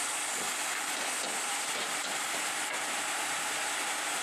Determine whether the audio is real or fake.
real